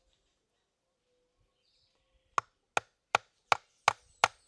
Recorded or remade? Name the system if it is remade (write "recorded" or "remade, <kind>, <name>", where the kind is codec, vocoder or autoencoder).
recorded